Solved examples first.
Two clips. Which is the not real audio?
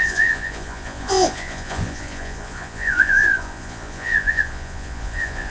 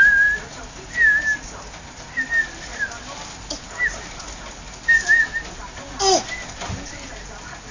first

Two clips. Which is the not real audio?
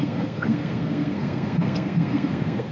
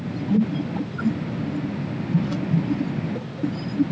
first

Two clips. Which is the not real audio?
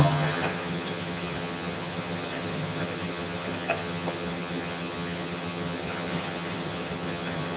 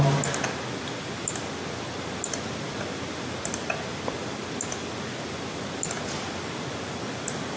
first